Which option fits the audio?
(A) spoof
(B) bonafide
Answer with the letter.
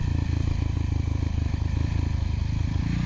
B